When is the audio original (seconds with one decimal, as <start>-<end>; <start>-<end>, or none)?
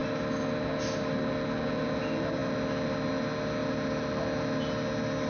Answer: 0.0-5.3